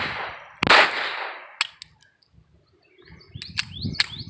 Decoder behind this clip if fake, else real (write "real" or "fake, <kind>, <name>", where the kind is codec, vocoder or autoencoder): real